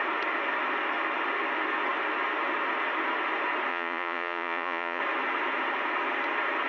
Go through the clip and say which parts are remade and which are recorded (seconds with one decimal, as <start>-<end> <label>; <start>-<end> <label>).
0.0-3.7 recorded; 3.7-5.0 remade; 5.0-6.7 recorded